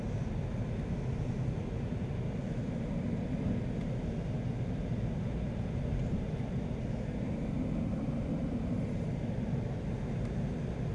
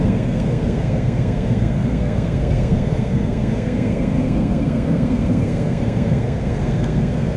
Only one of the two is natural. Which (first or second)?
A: first